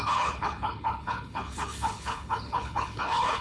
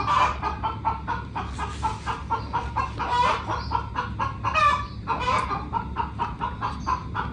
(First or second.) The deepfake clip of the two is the first